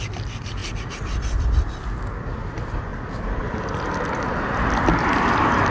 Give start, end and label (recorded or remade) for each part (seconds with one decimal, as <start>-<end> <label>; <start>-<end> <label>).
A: 0.0-0.6 recorded; 0.6-1.4 remade; 1.4-2.9 recorded; 2.9-3.6 remade; 3.6-5.7 recorded